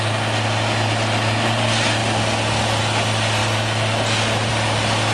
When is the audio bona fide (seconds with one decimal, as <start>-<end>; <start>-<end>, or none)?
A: 0.0-2.0; 2.8-5.1